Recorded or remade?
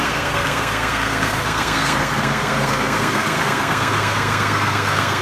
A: remade